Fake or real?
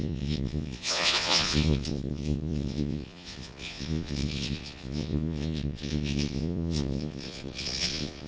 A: fake